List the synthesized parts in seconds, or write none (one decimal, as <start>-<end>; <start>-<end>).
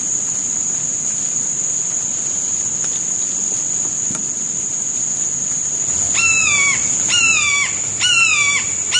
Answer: 2.1-2.7